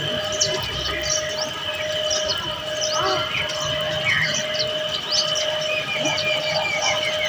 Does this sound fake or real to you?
real